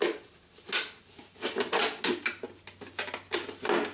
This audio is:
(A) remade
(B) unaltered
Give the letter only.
B